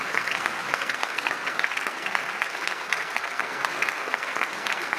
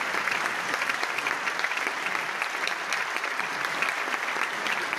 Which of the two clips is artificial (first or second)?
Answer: first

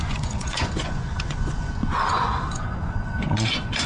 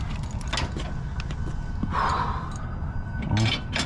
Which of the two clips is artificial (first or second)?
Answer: first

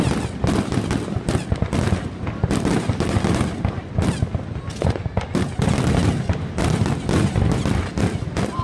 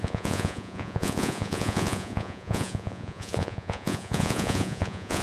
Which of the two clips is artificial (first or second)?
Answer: second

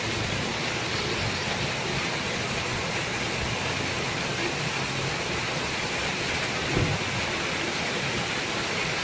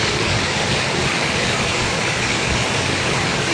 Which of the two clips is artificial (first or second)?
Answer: second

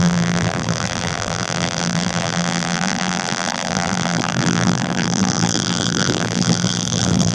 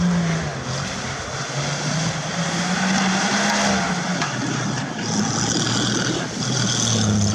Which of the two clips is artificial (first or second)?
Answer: first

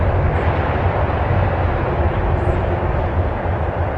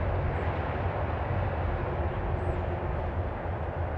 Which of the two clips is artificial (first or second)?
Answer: first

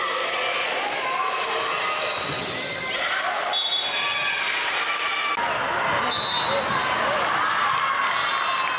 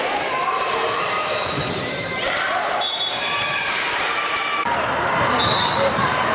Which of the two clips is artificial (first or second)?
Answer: second